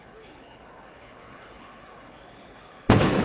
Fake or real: fake